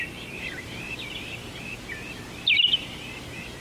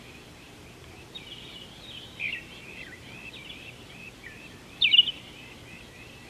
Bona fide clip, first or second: first